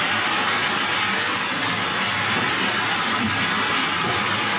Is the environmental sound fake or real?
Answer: real